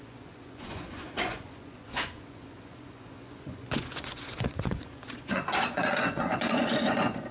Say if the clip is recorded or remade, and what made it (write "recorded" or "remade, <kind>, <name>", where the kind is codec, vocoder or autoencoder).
remade, vocoder, Vocos